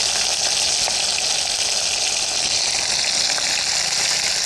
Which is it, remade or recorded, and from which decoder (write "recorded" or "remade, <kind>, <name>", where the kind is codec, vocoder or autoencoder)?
recorded